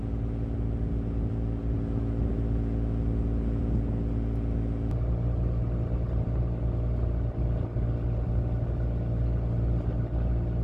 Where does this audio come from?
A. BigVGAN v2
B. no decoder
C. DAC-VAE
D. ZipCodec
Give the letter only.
B